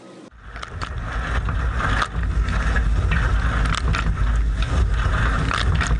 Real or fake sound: real